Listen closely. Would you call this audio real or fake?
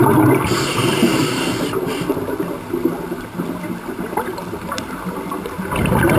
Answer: real